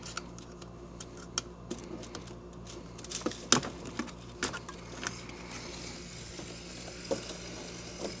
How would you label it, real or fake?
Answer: real